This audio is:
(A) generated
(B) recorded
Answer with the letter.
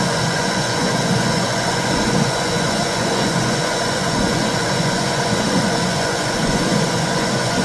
A